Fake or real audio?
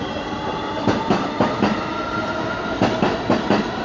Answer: real